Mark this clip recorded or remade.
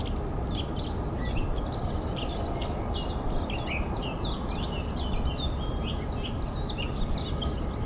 recorded